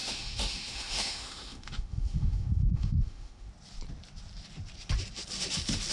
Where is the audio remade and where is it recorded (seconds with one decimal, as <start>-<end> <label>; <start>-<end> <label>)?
0.0-3.5 remade; 3.5-5.9 recorded